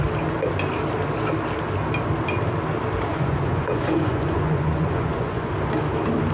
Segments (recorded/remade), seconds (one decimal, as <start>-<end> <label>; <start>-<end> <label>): 0.0-3.1 recorded; 3.1-5.5 remade; 5.5-6.3 recorded